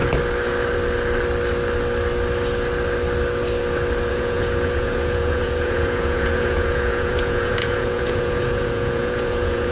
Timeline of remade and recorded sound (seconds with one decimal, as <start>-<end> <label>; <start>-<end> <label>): 0.0-4.1 recorded; 4.1-9.7 remade